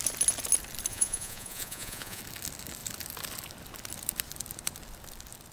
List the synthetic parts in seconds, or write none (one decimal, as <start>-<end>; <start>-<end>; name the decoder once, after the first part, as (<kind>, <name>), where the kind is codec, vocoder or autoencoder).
0.9-2.2 (vocoder, Vocos)

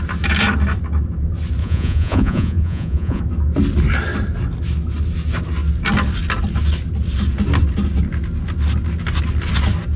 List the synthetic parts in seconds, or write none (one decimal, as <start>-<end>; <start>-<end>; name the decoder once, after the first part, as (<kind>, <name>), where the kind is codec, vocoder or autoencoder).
1.6-3.2 (vocoder, Vocos)